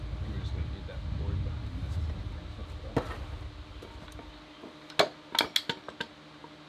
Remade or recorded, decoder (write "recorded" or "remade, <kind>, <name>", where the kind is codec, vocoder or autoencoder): recorded